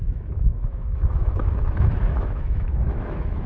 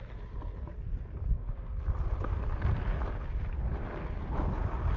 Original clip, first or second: second